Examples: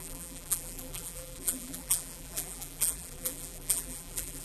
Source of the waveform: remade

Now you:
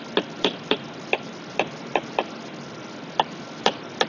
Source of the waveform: recorded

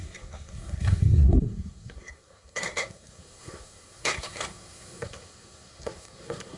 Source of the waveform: remade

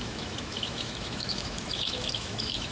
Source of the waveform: remade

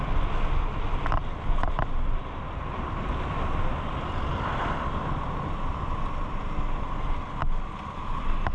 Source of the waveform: recorded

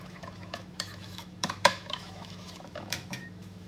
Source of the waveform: remade